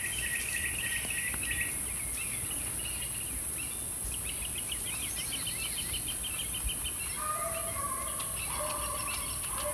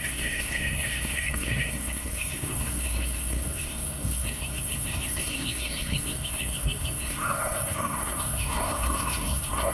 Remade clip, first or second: second